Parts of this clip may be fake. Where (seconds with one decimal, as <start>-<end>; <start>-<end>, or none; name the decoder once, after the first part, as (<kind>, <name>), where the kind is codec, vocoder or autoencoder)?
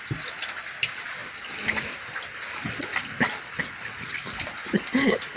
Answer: none